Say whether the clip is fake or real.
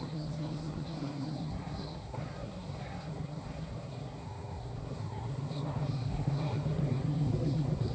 fake